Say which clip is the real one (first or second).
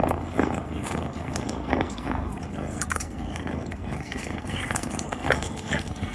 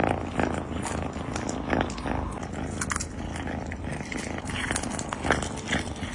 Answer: second